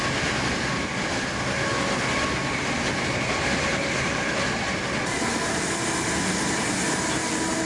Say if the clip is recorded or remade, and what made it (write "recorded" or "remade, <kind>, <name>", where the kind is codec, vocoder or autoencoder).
recorded